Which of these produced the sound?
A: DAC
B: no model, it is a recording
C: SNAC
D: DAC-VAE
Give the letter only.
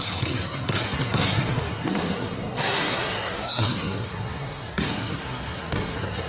C